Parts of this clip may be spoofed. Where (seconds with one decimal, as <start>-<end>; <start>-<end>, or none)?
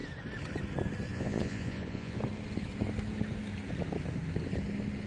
1.1-2.2